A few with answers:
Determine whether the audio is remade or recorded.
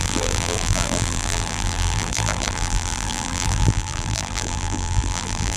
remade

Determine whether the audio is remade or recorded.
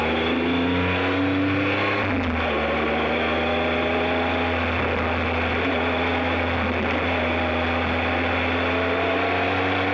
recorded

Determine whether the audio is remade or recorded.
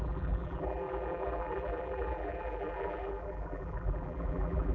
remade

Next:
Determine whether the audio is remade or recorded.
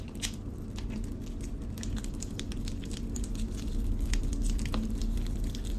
recorded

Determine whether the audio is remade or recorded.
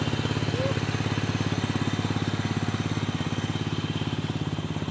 recorded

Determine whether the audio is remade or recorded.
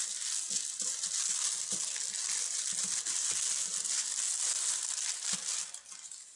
recorded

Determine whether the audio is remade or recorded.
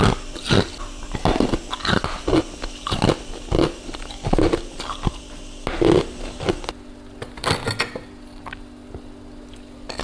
recorded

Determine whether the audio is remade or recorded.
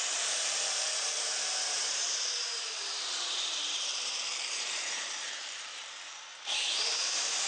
remade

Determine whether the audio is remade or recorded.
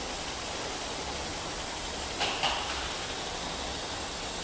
recorded